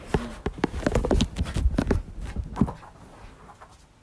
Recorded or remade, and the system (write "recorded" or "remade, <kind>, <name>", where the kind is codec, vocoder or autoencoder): recorded